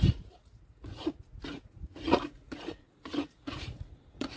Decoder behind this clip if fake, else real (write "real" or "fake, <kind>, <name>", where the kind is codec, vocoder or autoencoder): fake, vocoder, Vocos